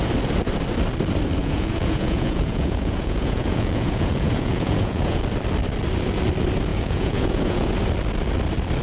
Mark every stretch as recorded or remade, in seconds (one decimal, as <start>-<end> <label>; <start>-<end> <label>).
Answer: 0.0-1.4 recorded; 1.4-5.2 remade; 5.2-6.7 recorded; 6.7-7.7 remade; 7.7-8.8 recorded